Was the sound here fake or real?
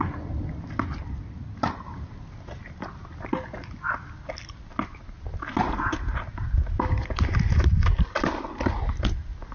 real